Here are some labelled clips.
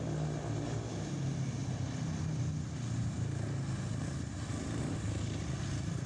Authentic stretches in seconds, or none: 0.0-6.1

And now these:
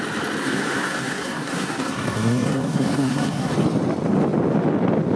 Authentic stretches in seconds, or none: 0.0-0.4; 3.5-5.2